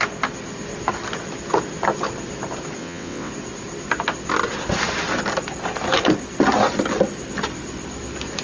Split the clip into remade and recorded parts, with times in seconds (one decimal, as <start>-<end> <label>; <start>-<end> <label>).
0.0-2.8 recorded; 2.8-3.3 remade; 3.3-8.4 recorded